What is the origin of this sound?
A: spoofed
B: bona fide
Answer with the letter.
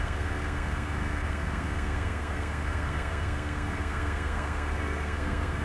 A